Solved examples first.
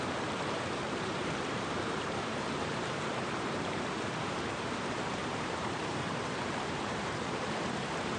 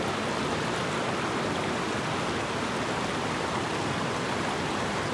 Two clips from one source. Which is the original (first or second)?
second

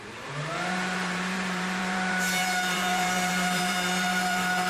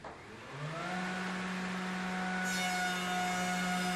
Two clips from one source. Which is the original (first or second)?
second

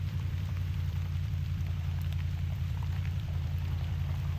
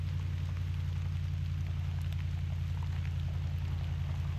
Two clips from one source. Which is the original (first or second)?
second